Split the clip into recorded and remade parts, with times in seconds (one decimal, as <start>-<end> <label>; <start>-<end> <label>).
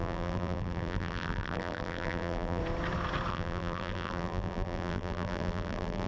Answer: 0.0-2.6 remade; 2.6-3.3 recorded; 3.3-6.1 remade